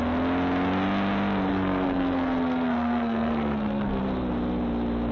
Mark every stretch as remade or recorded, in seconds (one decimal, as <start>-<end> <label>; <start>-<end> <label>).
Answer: 0.0-1.5 recorded; 1.5-4.0 remade; 4.0-5.1 recorded

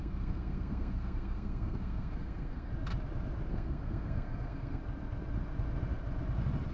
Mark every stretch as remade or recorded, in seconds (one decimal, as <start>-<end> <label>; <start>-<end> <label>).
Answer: 0.0-2.7 remade; 2.7-3.5 recorded; 3.5-4.8 remade; 4.8-6.7 recorded

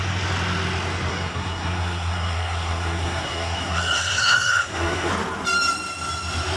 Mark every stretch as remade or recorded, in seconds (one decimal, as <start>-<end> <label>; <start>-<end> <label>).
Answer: 0.0-1.1 recorded; 1.1-5.1 remade; 5.1-6.6 recorded

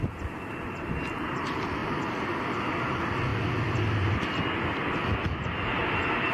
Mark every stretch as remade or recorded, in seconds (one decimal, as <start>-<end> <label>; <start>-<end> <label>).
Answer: 0.0-6.3 recorded

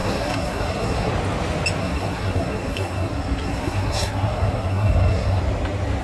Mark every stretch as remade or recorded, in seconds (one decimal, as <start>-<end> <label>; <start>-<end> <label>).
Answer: 0.0-1.1 remade; 1.1-1.8 recorded; 1.8-5.4 remade; 5.4-6.0 recorded

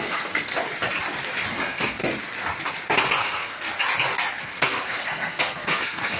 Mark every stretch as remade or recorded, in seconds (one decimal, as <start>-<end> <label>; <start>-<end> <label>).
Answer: 0.0-0.5 remade; 0.5-1.5 recorded; 1.5-2.0 remade; 2.0-3.2 recorded; 3.2-3.7 remade; 3.7-4.4 recorded; 4.4-6.2 remade

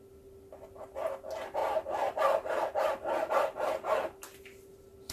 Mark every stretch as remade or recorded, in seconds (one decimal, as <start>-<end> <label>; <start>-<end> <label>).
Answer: 0.0-5.1 recorded